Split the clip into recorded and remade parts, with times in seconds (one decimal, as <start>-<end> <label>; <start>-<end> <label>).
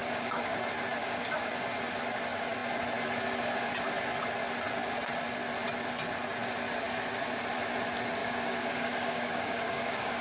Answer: 0.0-0.6 remade; 0.6-1.0 recorded; 1.0-1.5 remade; 1.5-8.2 recorded; 8.2-10.2 remade